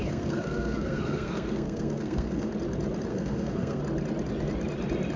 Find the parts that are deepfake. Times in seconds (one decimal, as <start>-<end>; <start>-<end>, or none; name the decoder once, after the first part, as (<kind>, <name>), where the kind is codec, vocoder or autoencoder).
0.0-2.5 (codec, SNAC); 3.1-3.8